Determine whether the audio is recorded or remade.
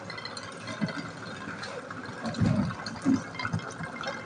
recorded